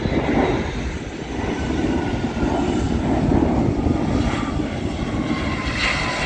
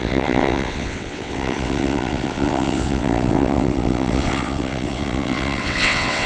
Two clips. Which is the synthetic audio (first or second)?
second